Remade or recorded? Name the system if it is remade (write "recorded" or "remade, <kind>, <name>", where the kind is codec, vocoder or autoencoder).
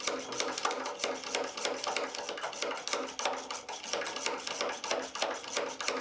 recorded